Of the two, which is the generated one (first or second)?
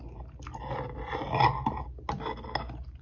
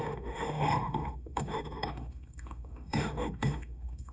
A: second